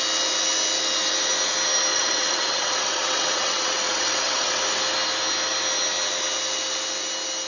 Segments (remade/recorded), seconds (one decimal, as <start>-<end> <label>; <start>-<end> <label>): 0.0-1.9 recorded; 1.9-4.6 remade; 4.6-7.5 recorded